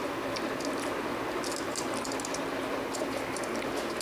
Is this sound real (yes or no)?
yes